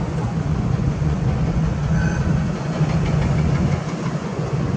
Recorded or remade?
remade